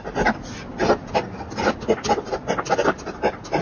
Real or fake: real